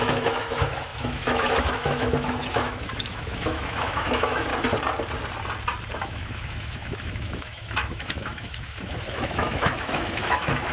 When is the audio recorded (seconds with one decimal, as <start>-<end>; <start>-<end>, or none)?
4.5-6.0